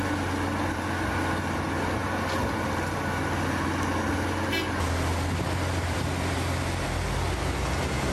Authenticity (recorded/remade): recorded